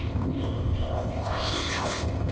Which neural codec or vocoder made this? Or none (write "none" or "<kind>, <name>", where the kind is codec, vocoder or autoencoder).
codec, ZipCodec